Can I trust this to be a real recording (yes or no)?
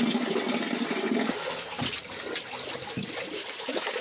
yes